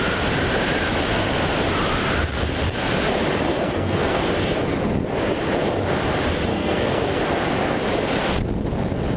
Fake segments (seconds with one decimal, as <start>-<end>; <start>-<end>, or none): 3.5-4.3; 6.5-7.2